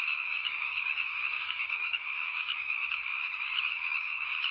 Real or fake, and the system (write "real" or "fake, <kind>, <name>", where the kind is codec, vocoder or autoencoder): fake, codec, DAC